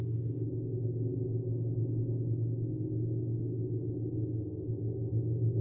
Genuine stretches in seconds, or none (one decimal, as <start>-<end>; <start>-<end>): 0.0-5.6